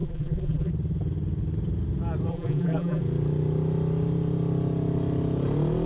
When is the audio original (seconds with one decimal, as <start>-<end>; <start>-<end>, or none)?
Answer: 0.7-2.3; 3.0-5.9